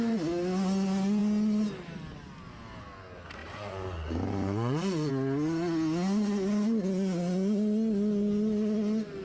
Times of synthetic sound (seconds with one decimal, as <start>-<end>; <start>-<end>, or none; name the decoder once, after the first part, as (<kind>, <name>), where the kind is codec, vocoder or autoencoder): 3.4-5.1 (vocoder, Vocos)

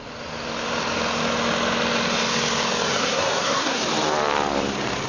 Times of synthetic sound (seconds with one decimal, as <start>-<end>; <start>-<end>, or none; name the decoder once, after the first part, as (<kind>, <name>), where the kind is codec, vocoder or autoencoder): 3.0-3.8 (codec, SNAC)